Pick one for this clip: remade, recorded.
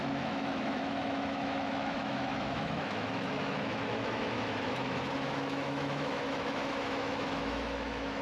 remade